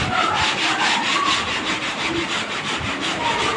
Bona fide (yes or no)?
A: yes